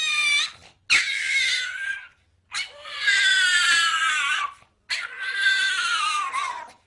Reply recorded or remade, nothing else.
recorded